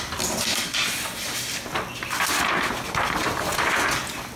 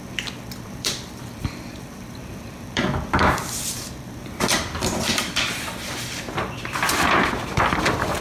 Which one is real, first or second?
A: first